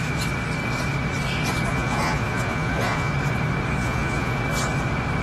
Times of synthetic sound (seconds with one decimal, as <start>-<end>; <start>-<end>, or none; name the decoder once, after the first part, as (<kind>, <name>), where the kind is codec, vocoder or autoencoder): 1.7-3.1 (vocoder, Vocos); 3.8-4.4